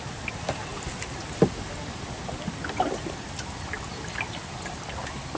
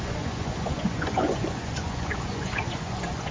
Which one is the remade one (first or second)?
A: second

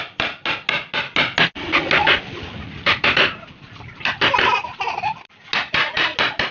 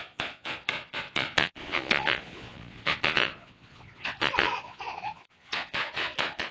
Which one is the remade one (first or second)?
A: second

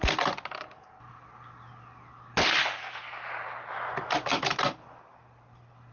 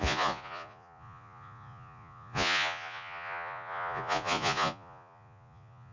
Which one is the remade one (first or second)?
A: second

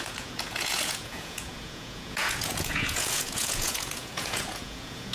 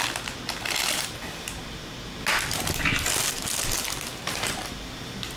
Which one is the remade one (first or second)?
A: first